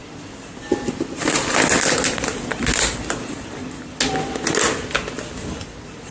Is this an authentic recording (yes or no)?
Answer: yes